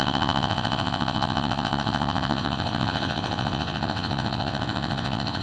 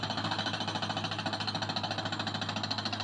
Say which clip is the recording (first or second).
second